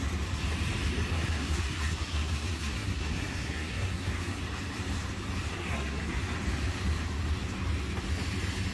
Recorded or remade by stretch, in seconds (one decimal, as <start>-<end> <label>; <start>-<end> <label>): 0.0-1.1 recorded; 1.1-4.4 remade; 4.4-5.5 recorded; 5.5-6.2 remade; 6.2-8.7 recorded

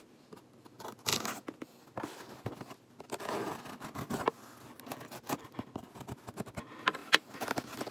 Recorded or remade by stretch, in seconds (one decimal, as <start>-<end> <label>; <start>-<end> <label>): 0.0-7.9 recorded

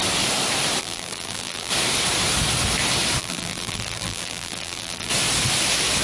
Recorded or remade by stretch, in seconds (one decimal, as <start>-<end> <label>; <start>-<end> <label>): 0.0-0.8 recorded; 0.8-1.7 remade; 1.7-3.2 recorded; 3.2-5.1 remade; 5.1-6.0 recorded

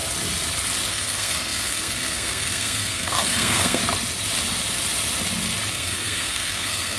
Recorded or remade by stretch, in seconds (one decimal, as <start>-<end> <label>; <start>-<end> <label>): 0.0-0.9 recorded; 0.9-3.8 remade; 3.8-5.7 recorded; 5.7-7.0 remade

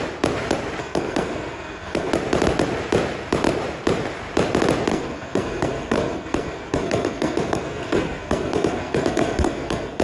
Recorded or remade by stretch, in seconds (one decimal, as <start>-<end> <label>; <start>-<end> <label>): 0.0-0.8 recorded; 0.8-2.1 remade; 2.1-4.9 recorded; 4.9-10.0 remade